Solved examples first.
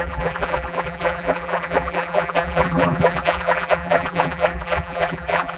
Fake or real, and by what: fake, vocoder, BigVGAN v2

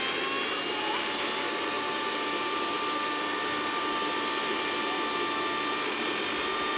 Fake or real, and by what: real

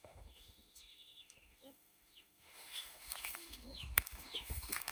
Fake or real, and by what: fake, autoencoder, DAC-VAE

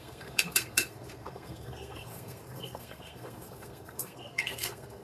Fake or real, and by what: fake, codec, SNAC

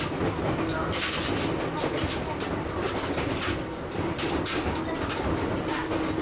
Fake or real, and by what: real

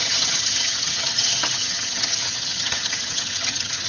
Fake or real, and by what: fake, vocoder, HiFi-GAN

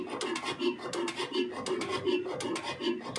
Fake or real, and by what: real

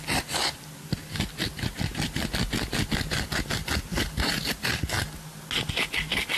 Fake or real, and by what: real